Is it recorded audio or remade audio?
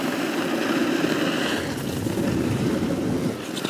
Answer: recorded